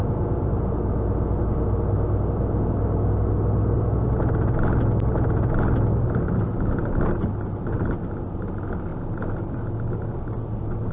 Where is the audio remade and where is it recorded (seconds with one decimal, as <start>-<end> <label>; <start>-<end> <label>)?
0.0-10.9 recorded